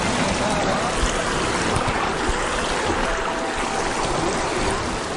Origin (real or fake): real